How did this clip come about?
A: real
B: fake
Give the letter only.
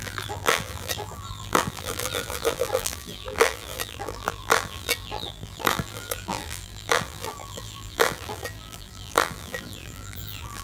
B